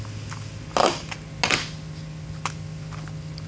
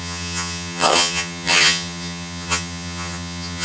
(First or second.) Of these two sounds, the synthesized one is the second